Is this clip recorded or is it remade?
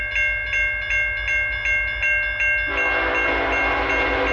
recorded